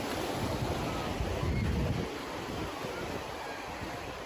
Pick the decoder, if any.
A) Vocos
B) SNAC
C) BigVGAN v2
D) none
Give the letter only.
D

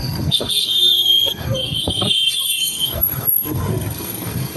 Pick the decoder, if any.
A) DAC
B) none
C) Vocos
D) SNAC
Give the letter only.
D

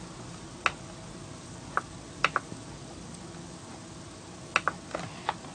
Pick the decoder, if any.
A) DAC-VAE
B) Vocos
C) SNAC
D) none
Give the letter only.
D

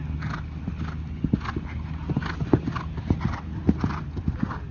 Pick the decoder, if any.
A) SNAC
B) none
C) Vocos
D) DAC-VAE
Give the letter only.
B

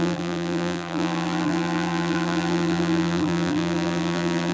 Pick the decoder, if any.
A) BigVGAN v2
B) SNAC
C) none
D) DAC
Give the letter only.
A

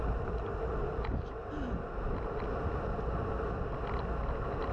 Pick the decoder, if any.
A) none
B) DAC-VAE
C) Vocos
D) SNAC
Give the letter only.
A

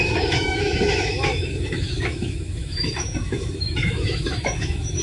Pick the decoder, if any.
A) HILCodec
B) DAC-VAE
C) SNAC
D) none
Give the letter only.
B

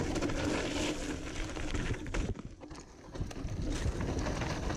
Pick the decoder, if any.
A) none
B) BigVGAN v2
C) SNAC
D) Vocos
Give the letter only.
A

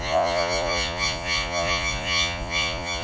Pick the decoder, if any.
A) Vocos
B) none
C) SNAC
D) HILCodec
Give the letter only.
A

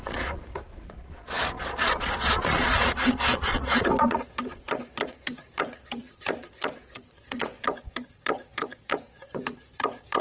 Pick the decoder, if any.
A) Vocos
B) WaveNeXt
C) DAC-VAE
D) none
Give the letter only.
A